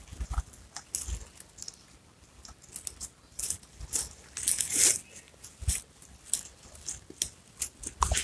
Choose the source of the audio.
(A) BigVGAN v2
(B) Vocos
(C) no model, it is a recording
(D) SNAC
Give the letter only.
C